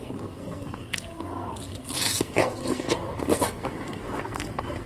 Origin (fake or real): fake